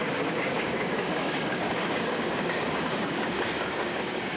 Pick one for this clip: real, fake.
fake